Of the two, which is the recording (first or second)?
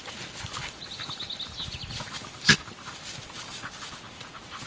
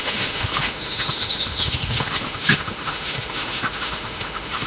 first